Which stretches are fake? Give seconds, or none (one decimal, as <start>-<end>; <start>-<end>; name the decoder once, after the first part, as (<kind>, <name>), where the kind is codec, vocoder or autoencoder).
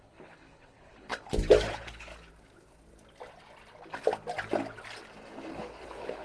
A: 0.0-1.1 (codec, HILCodec); 1.7-2.1; 5.6-6.2